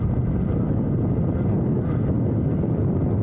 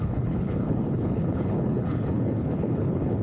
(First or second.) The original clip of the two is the first